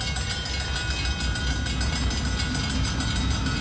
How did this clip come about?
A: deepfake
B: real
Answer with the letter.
B